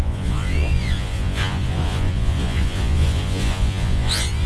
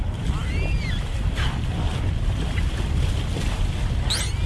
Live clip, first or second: second